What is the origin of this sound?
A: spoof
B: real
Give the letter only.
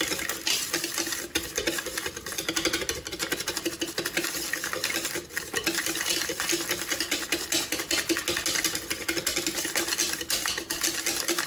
B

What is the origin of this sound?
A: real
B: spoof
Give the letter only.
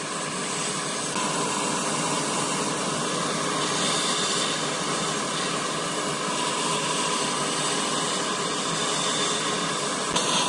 A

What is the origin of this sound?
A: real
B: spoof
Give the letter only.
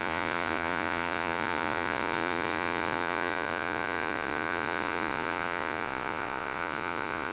B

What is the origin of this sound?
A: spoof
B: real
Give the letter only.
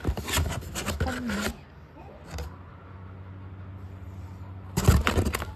B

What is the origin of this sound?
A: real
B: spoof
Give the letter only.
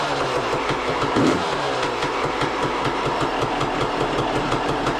B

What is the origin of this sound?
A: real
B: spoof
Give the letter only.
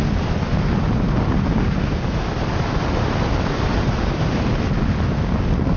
A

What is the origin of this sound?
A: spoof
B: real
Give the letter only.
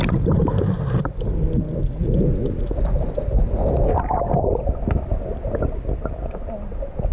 B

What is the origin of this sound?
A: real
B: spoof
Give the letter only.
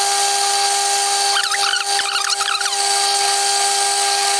A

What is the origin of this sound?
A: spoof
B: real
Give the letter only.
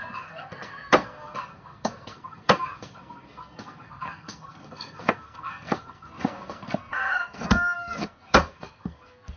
A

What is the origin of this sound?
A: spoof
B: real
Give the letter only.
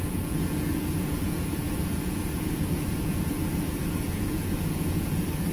A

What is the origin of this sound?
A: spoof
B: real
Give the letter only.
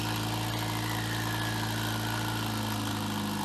B